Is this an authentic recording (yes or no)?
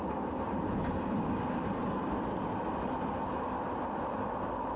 yes